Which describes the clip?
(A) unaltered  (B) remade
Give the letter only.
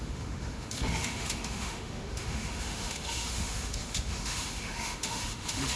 B